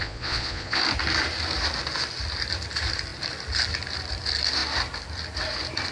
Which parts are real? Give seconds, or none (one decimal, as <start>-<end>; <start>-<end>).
0.8-5.9